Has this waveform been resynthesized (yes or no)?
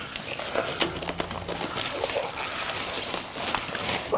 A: no